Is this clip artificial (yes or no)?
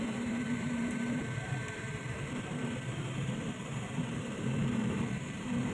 yes